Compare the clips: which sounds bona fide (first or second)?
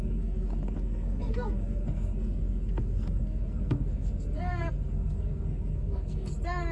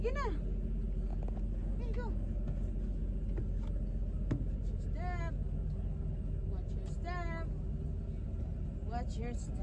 second